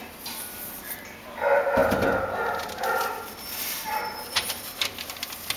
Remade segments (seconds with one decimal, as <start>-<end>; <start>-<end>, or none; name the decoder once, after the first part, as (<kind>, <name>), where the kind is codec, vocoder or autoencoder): none